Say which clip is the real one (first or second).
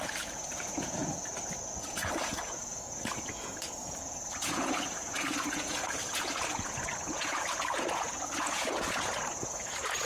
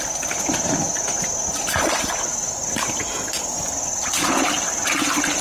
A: second